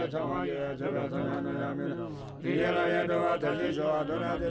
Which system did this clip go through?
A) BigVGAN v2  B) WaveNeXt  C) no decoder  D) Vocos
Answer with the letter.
C